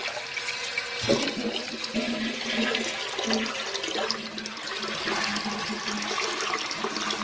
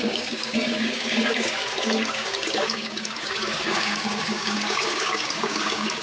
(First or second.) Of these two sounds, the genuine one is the first